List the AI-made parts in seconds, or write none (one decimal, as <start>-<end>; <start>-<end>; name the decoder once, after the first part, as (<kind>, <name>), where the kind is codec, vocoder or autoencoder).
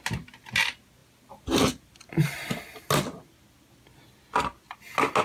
none